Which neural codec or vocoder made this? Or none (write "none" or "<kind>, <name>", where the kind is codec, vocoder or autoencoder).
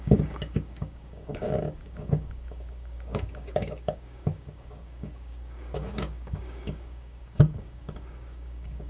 codec, DAC